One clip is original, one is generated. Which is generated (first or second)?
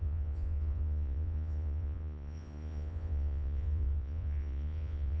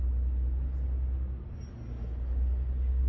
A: first